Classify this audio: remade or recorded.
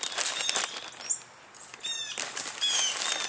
recorded